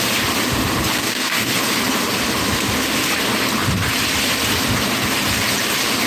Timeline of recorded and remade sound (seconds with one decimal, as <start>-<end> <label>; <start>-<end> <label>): 0.0-1.0 recorded; 1.0-1.5 remade; 1.5-6.1 recorded